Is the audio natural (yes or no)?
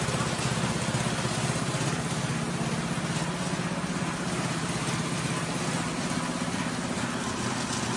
yes